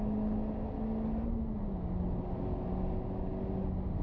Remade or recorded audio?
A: recorded